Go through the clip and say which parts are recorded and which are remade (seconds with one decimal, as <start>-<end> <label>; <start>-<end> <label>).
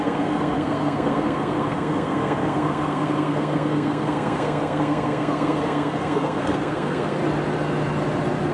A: 0.0-7.2 remade; 7.2-8.5 recorded